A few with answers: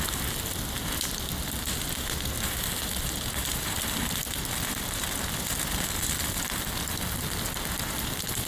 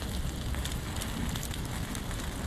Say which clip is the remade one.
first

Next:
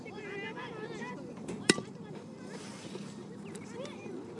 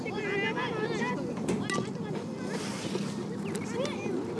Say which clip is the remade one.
first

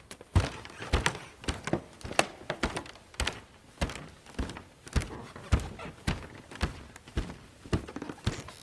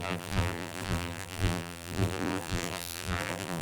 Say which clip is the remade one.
second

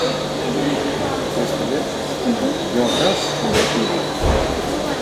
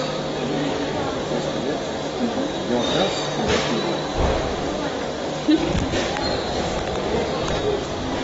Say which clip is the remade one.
second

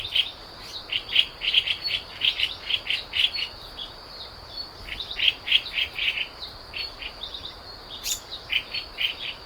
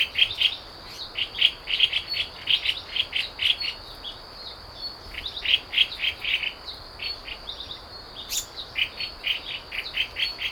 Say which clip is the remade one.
first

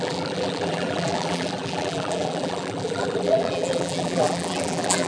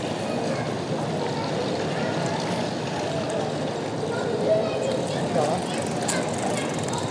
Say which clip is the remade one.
first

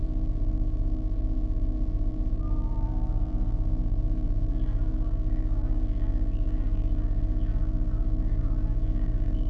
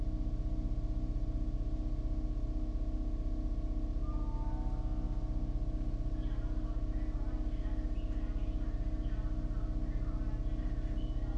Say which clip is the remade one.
first